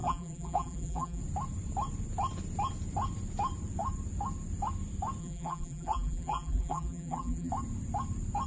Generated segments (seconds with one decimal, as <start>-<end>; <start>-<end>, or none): 0.0-1.2; 5.2-7.5